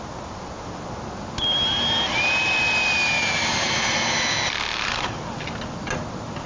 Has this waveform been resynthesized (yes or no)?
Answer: no